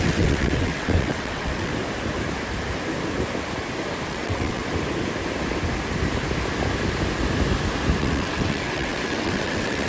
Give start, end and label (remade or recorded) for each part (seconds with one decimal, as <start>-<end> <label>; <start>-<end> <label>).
0.0-1.7 remade; 1.7-4.1 recorded; 4.1-4.6 remade; 4.6-8.0 recorded; 8.0-9.9 remade